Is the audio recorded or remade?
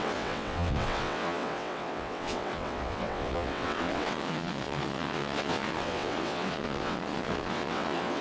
remade